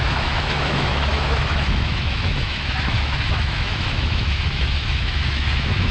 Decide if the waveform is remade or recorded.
remade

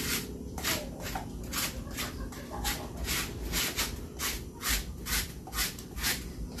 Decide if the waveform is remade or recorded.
remade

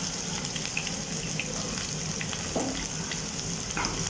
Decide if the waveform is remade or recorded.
recorded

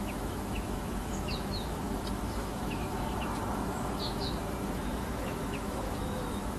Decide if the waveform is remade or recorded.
remade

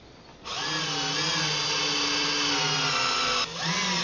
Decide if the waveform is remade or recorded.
recorded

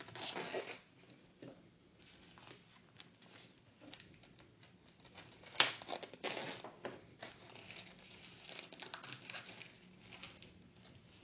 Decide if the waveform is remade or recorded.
recorded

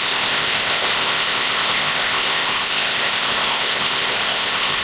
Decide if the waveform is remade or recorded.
remade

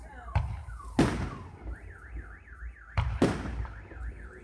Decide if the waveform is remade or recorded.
recorded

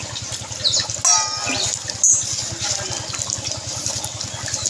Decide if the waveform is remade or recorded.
recorded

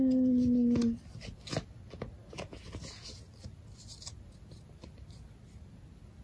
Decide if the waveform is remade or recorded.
recorded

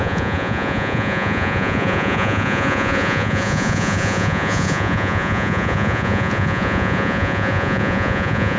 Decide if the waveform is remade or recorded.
remade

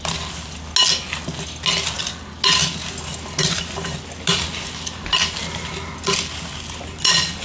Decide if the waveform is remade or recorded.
recorded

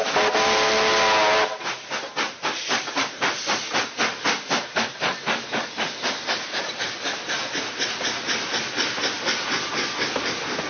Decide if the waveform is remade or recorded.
recorded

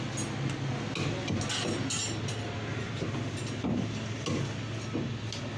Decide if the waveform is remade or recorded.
recorded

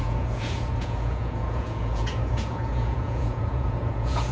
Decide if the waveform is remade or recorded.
remade